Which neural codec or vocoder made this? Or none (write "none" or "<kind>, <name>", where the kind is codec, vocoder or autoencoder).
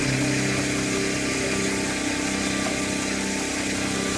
none